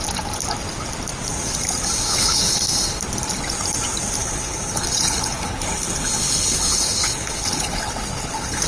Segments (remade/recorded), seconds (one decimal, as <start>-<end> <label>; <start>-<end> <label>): 0.0-2.1 recorded; 2.1-2.6 remade; 2.6-4.2 recorded; 4.2-8.7 remade

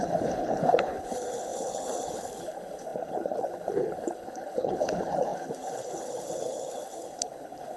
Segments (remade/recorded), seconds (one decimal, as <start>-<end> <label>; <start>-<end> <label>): 0.0-7.8 remade

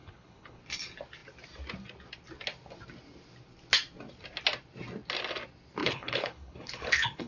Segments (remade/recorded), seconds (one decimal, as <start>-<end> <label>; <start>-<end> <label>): 0.0-0.6 remade; 0.6-5.8 recorded; 5.8-7.3 remade

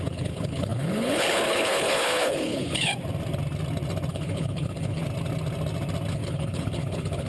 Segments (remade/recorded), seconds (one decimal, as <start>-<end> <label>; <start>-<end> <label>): 0.0-2.9 remade; 2.9-4.1 recorded; 4.1-5.0 remade; 5.0-6.1 recorded; 6.1-7.3 remade